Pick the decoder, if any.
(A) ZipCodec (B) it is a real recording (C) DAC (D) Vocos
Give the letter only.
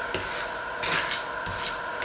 B